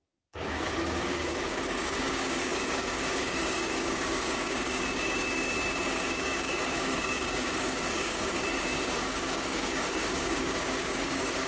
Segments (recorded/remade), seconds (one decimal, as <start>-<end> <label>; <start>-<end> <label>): 0.0-11.5 remade